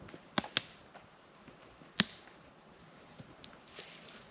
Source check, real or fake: real